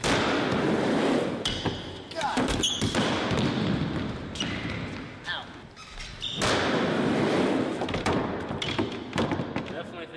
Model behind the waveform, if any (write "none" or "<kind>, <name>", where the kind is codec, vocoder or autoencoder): none